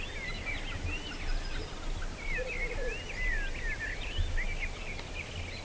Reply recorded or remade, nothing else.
recorded